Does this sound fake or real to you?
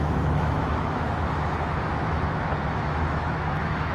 fake